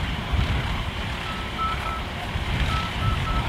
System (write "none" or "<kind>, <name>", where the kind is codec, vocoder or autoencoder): vocoder, BigVGAN v2